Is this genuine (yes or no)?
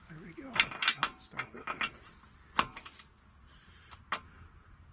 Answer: yes